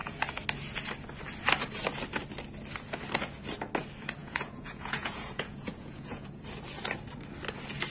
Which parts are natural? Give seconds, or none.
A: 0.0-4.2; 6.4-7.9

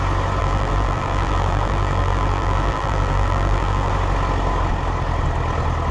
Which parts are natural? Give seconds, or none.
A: 0.0-0.4; 3.9-5.9